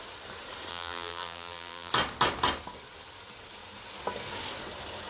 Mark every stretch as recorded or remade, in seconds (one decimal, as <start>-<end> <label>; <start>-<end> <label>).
0.0-0.7 recorded; 0.7-1.9 remade; 1.9-5.1 recorded